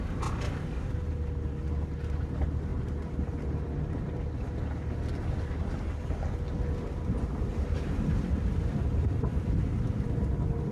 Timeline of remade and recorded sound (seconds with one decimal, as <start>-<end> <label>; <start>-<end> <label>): 0.0-10.7 recorded